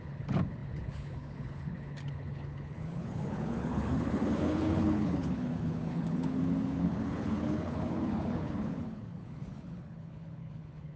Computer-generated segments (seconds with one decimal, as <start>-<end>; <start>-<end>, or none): 0.0-11.0